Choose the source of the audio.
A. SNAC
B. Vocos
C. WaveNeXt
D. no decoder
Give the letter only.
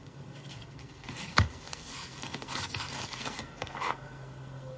A